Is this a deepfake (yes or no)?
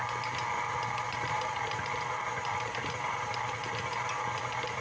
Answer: no